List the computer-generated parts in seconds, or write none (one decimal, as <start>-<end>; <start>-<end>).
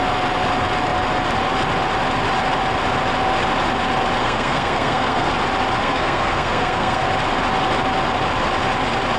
4.2-5.3; 5.8-7.0